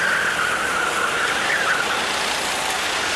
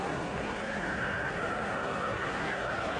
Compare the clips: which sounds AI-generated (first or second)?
second